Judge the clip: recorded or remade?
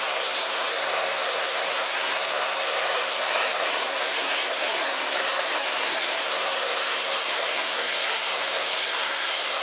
remade